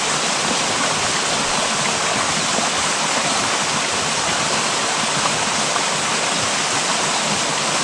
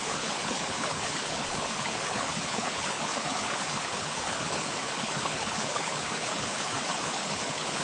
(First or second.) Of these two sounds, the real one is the first